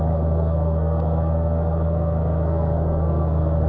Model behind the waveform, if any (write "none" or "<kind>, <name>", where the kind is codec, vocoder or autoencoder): codec, SNAC